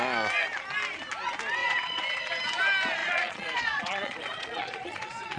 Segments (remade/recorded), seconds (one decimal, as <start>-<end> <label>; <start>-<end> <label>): 0.0-1.6 recorded; 1.6-2.3 remade; 2.3-3.0 recorded; 3.0-5.4 remade